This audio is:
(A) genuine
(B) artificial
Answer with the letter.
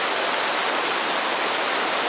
A